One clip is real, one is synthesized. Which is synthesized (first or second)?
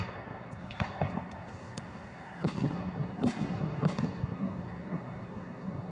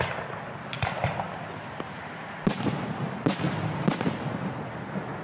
first